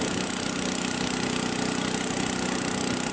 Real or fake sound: real